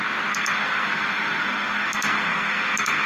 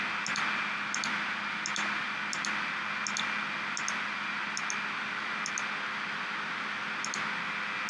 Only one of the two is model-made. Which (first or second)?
first